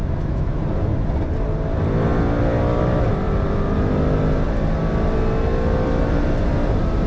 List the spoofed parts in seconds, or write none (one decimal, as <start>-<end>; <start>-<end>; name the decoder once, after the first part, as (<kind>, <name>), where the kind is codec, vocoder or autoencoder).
0.0-0.6 (autoencoder, DAC-VAE)